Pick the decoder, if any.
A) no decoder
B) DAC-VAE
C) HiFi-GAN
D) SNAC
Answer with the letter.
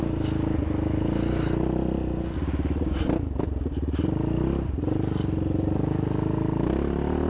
A